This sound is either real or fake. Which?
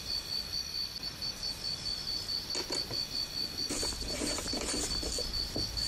real